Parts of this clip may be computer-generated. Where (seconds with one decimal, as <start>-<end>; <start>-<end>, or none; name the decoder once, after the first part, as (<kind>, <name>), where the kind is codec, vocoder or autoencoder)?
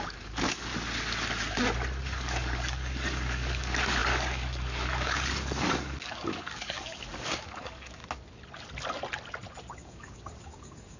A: 0.0-0.7 (codec, DAC); 2.0-8.0; 9.7-11.0